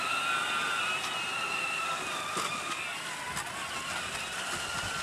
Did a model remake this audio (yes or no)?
no